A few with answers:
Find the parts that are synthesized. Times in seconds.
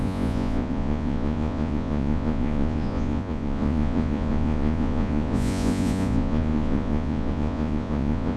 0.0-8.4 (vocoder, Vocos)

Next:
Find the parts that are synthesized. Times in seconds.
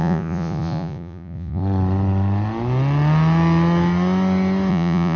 0.0-1.6 (vocoder, Vocos); 4.7-5.2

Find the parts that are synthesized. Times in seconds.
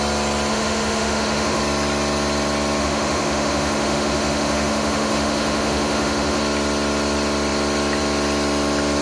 0.5-1.6 (autoencoder, DAC-VAE); 2.8-6.4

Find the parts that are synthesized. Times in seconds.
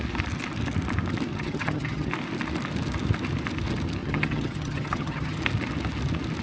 1.3-2.1 (vocoder, HiFi-GAN); 4.0-5.4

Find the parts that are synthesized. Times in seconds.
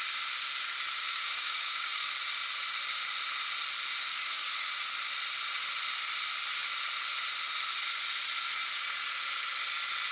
1.0-2.1 (codec, DAC); 4.1-4.7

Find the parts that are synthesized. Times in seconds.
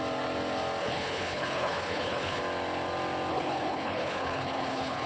0.8-2.4 (codec, HILCodec); 3.3-5.1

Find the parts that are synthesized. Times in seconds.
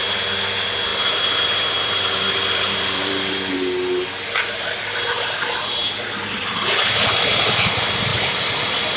0.9-3.3 (vocoder, BigVGAN v2); 5.8-7.1; 8.1-9.0